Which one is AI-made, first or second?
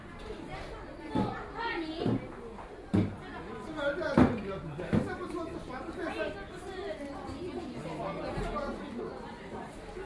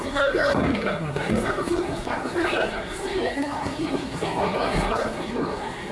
second